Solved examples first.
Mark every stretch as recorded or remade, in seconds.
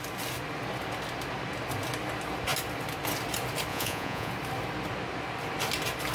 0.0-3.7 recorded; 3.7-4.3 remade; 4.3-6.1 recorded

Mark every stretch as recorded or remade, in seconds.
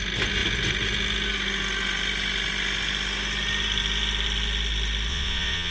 0.0-5.1 recorded; 5.1-5.7 remade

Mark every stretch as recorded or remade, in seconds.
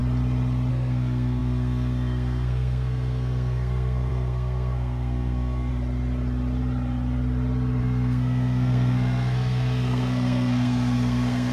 0.0-0.7 recorded; 0.7-5.7 remade; 5.7-7.8 recorded; 7.8-11.5 remade